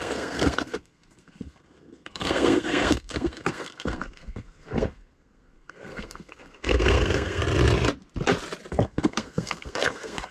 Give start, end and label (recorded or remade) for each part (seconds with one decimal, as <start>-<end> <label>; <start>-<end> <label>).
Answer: 0.0-7.4 remade; 7.4-8.7 recorded; 8.7-10.3 remade